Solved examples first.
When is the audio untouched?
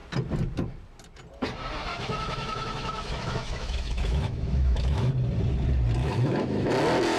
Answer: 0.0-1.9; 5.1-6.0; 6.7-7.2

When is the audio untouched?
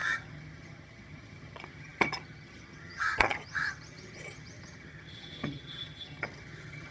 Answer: none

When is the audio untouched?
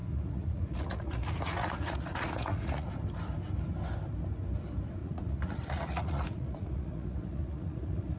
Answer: 2.9-5.0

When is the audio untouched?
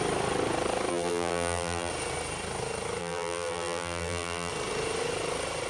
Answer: 0.0-0.9; 1.9-3.0; 4.5-5.7